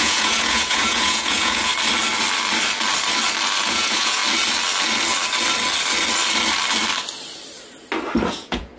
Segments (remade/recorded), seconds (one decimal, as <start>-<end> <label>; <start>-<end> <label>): 0.0-1.7 remade; 1.7-3.7 recorded; 3.7-4.2 remade; 4.2-8.3 recorded; 8.3-8.8 remade